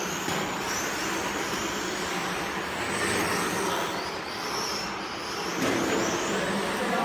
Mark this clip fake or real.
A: real